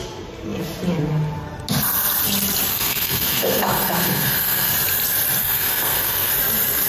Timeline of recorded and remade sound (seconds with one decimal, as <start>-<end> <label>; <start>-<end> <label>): 0.0-2.7 recorded; 2.7-4.7 remade; 4.7-5.4 recorded; 5.4-6.3 remade; 6.3-6.9 recorded